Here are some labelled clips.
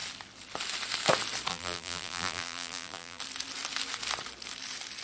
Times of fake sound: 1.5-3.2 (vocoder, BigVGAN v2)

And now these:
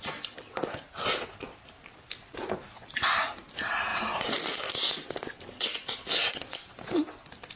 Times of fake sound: 3.9-4.6 (vocoder, BigVGAN v2)

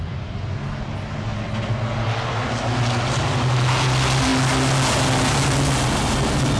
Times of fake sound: none

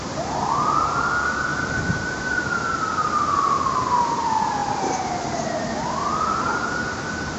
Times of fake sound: 1.5-2.1 (vocoder, BigVGAN v2)

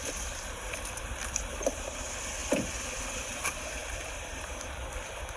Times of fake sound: 0.0-3.8 (vocoder, BigVGAN v2); 4.6-5.4

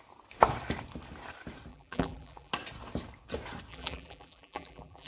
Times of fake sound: 1.7-2.5 (vocoder, BigVGAN v2); 3.7-5.1

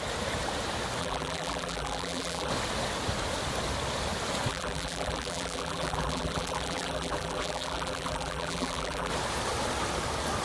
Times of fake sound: 1.0-2.5 (vocoder, BigVGAN v2); 4.5-9.1

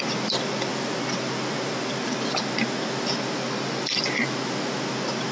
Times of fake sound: none